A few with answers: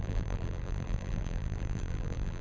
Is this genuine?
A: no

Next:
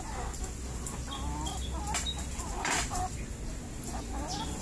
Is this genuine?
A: yes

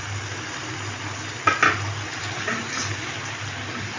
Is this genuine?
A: yes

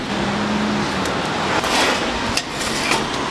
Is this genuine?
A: yes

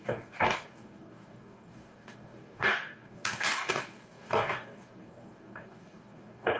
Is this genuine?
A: no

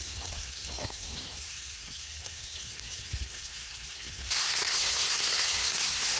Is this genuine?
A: no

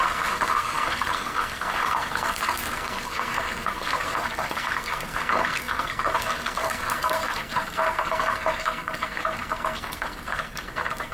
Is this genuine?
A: no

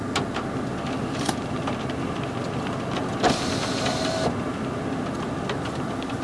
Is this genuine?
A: yes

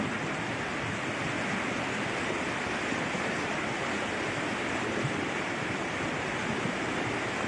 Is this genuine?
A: yes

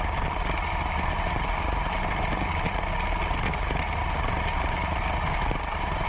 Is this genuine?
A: yes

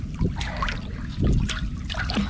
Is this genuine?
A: yes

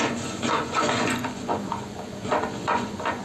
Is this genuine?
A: no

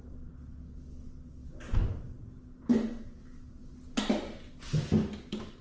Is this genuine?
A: yes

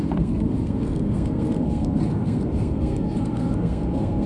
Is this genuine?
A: no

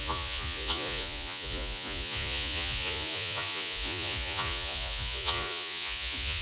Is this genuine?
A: no